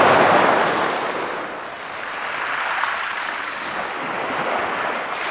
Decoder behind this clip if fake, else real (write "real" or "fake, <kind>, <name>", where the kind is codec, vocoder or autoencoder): real